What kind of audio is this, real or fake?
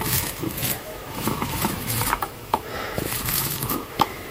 fake